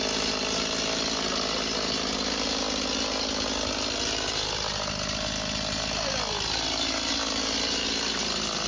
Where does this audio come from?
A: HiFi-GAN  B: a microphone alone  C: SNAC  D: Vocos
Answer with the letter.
B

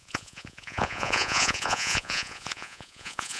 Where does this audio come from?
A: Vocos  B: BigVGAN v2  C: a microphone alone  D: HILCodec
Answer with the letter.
A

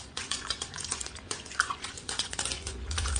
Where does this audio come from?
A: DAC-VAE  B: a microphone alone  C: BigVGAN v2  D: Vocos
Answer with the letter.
D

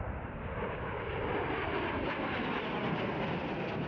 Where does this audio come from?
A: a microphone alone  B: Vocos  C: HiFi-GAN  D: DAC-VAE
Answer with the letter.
A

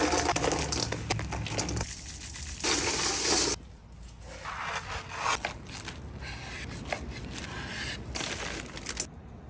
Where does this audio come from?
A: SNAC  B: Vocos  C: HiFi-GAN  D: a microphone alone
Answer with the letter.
D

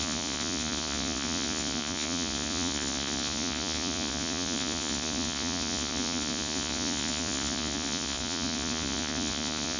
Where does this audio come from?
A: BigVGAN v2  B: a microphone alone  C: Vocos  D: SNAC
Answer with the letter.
C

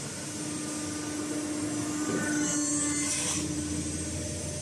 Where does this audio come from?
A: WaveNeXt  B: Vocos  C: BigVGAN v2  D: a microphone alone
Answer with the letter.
D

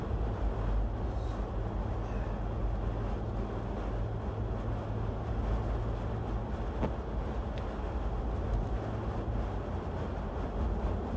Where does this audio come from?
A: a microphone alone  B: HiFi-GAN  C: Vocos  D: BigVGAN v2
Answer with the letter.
A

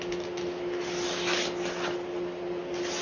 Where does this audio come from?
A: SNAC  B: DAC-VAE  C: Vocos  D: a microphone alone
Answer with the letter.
D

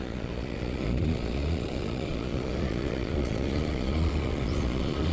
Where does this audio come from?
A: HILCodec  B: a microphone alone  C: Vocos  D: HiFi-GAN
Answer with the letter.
C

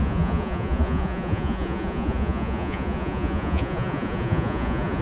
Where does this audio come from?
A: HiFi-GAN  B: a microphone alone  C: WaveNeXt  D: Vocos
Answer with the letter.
D